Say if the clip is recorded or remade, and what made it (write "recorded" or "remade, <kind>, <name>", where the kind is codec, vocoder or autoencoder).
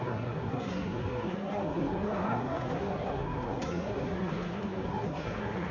remade, codec, SNAC